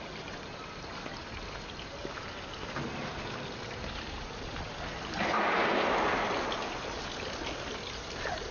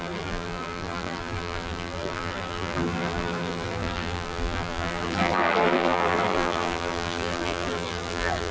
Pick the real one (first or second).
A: first